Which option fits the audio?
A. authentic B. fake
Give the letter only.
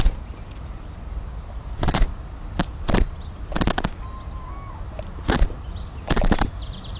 A